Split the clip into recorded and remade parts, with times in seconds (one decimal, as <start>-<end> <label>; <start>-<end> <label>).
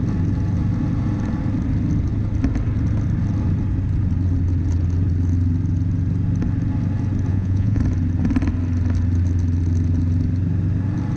0.0-7.3 recorded; 7.3-7.8 remade; 7.8-11.2 recorded